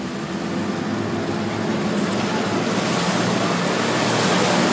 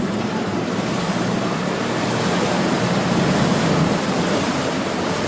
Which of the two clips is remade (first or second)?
second